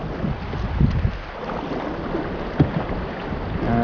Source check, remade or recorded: recorded